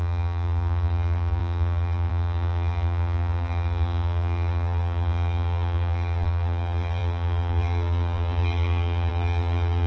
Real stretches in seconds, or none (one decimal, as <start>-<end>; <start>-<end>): none